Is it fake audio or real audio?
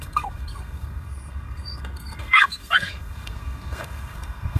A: fake